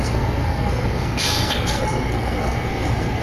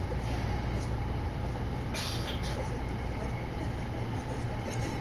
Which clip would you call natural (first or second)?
second